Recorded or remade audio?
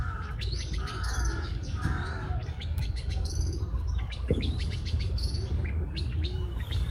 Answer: remade